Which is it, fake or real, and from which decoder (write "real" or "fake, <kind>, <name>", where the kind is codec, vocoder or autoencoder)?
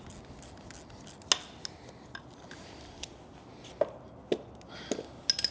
real